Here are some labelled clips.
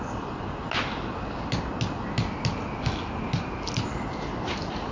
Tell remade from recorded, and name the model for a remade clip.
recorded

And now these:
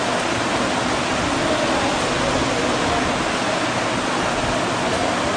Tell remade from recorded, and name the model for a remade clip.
recorded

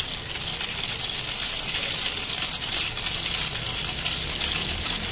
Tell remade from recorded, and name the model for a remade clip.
recorded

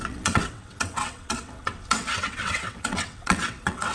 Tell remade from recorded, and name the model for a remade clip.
remade, vocoder, WaveNeXt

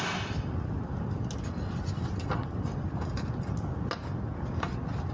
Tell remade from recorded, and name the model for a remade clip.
recorded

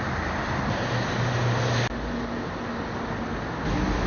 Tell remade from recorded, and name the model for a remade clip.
recorded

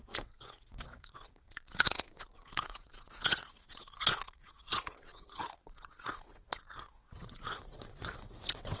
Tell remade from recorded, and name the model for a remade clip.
remade, vocoder, WaveNeXt